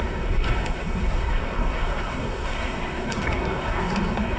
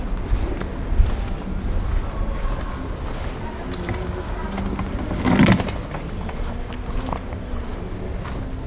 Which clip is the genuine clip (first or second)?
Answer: second